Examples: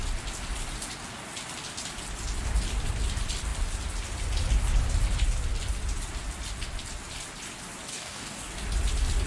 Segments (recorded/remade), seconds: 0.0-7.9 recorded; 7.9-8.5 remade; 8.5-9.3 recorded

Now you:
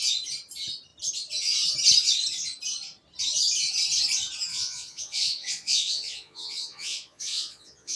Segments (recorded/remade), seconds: 0.0-4.5 recorded; 4.5-8.0 remade

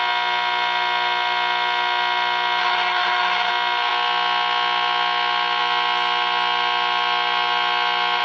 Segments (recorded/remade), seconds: 0.0-2.6 recorded; 2.6-3.5 remade; 3.5-8.2 recorded

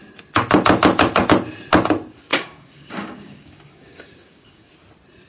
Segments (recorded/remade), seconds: 0.0-2.3 recorded; 2.3-4.7 remade; 4.7-5.3 recorded

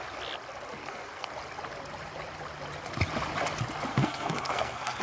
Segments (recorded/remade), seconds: 0.0-0.8 recorded; 0.8-1.3 remade; 1.3-3.9 recorded; 3.9-5.0 remade